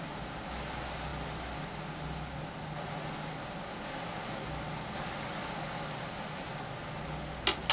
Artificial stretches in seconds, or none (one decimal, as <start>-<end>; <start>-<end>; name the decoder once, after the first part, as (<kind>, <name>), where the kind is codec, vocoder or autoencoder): none